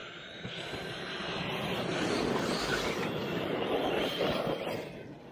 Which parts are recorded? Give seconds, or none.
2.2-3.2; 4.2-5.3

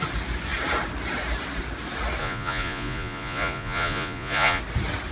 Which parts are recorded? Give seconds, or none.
0.0-2.2; 4.6-5.1

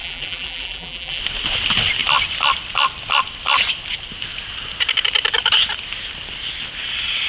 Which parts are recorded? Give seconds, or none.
1.2-7.3

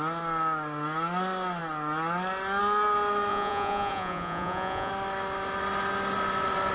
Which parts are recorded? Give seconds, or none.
0.0-3.3; 4.9-6.7

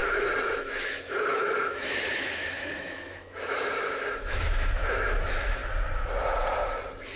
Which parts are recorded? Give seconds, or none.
5.6-7.2

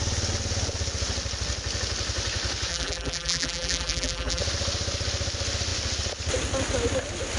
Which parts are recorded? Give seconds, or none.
0.0-2.7; 4.4-7.4